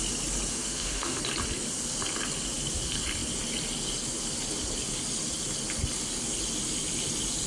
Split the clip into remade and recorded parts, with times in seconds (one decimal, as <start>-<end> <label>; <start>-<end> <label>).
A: 0.0-0.5 recorded; 0.5-1.2 remade; 1.2-7.5 recorded